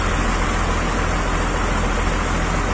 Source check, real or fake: real